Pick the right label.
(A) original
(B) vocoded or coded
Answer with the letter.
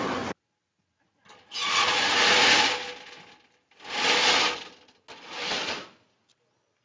A